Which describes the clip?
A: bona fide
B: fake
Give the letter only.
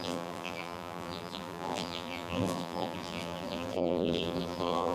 B